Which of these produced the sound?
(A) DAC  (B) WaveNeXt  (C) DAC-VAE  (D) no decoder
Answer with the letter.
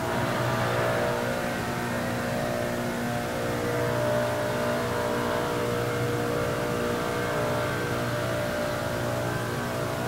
D